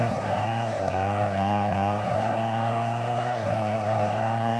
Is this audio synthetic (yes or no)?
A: yes